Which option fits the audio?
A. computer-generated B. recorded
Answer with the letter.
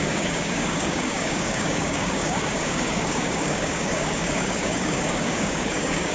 A